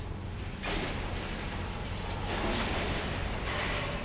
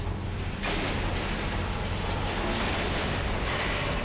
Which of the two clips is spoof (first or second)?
first